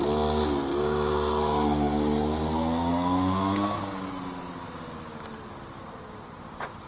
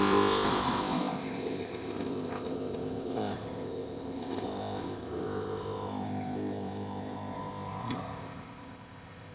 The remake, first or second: second